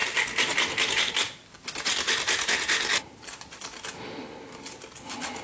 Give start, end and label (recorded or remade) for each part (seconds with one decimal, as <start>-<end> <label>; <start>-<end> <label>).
0.0-5.4 recorded